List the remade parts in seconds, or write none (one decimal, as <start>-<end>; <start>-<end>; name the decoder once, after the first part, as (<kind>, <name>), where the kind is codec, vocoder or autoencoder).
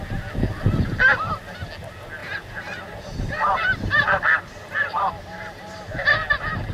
2.2-6.1 (vocoder, BigVGAN v2)